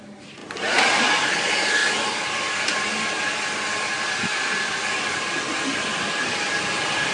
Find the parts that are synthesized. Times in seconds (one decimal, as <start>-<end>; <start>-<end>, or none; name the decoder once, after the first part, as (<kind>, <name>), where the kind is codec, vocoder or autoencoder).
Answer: 0.0-0.4 (vocoder, BigVGAN v2); 0.9-7.1